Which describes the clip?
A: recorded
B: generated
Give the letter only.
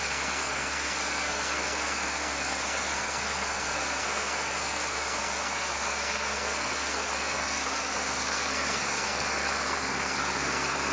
B